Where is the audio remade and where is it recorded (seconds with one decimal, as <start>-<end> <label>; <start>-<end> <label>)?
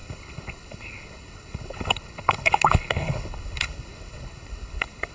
0.0-5.1 remade